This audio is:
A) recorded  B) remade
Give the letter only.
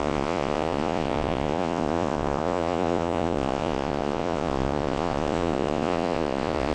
B